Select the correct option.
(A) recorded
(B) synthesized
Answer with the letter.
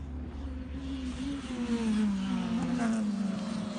A